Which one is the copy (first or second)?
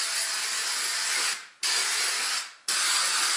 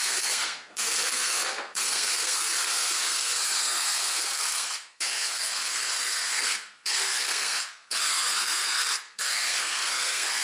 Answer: second